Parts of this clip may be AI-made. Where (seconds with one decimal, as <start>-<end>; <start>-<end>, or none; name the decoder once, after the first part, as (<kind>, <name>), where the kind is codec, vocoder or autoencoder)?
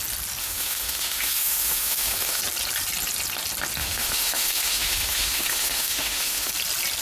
0.4-2.4 (autoencoder, DAC-VAE); 3.8-6.5